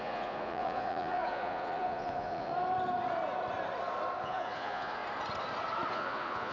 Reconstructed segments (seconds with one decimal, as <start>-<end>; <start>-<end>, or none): 0.0-2.5; 4.2-5.0; 5.9-6.5